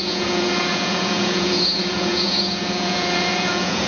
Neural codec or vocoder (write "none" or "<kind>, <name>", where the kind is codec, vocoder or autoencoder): vocoder, Vocos